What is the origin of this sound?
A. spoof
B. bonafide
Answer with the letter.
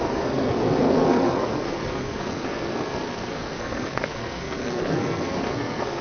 A